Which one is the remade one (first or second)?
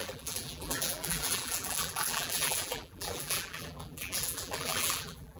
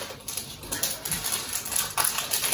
first